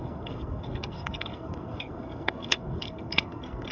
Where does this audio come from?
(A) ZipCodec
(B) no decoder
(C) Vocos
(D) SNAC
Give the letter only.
D